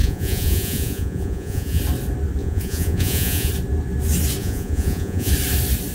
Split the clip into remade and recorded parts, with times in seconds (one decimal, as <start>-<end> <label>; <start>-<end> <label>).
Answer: 0.0-1.8 remade; 1.8-2.4 recorded; 2.4-3.5 remade; 3.5-4.4 recorded; 4.4-5.3 remade; 5.3-5.9 recorded